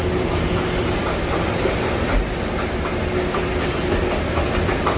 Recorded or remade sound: recorded